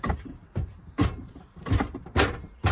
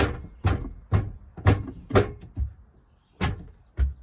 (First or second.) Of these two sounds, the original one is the second